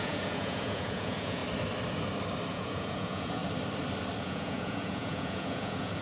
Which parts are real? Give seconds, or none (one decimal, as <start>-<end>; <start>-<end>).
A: 1.4-2.5; 3.4-4.2